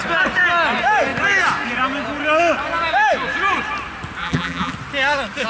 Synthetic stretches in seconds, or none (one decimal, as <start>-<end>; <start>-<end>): 4.2-4.7